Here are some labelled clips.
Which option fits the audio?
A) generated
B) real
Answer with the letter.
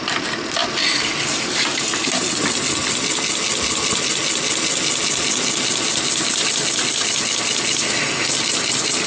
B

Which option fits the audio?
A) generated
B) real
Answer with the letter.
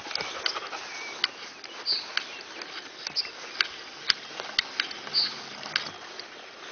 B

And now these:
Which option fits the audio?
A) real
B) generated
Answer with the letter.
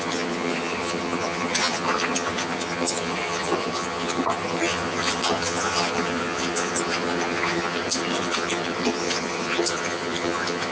B